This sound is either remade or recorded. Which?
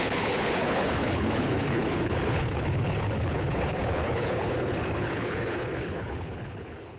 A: remade